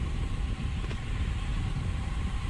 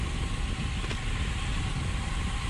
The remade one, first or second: first